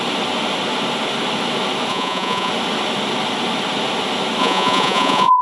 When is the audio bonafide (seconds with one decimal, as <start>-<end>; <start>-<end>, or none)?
0.0-1.9; 2.5-4.4

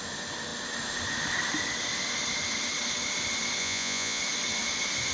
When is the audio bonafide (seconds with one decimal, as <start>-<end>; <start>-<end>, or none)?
0.0-3.6; 4.2-5.1

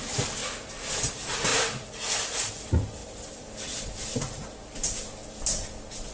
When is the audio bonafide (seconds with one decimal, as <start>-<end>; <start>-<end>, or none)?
0.0-6.1